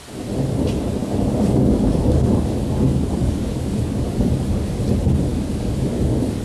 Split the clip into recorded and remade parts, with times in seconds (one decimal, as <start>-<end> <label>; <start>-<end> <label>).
0.0-1.0 recorded; 1.0-4.8 remade; 4.8-5.3 recorded; 5.3-6.4 remade